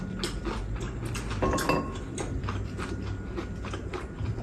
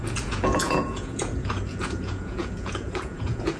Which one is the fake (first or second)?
second